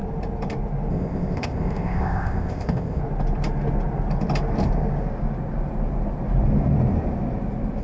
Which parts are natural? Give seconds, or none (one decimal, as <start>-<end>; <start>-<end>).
0.0-0.9; 3.0-7.8